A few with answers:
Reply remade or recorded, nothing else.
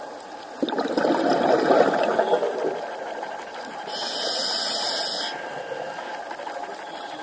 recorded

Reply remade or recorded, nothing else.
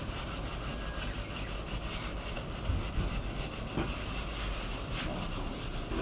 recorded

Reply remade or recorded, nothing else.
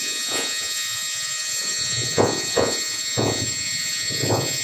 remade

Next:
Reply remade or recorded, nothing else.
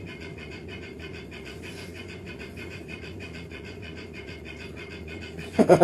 remade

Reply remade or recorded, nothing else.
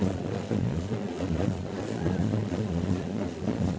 remade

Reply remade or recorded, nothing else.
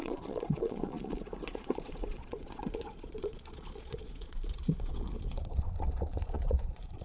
remade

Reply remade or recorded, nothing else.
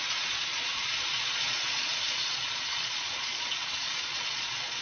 remade